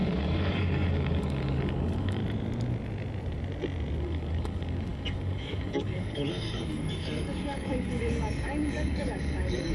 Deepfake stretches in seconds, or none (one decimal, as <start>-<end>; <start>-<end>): 0.0-2.2; 4.0-9.7

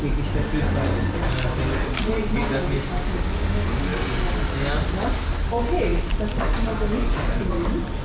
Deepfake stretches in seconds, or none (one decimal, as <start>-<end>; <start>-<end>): none

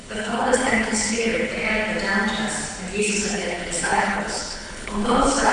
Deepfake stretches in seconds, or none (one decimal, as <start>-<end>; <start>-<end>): 0.0-1.5; 3.0-5.5

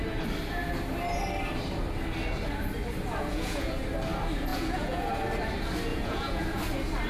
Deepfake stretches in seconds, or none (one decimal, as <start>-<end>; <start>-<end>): 3.3-3.8; 4.5-5.1; 5.9-6.6

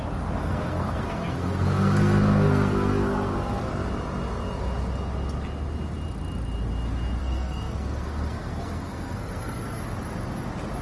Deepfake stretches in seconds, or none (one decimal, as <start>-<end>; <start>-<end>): 0.4-3.7; 7.2-9.8

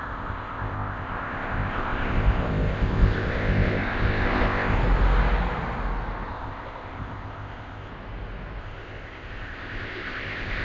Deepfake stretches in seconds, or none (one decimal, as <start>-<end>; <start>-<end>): 0.0-4.8; 6.3-7.9; 8.6-10.6

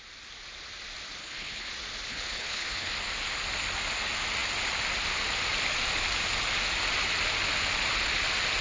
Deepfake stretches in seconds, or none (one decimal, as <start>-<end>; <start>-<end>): 1.2-1.7; 2.1-2.9

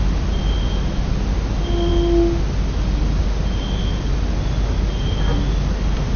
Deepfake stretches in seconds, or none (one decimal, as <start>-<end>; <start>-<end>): none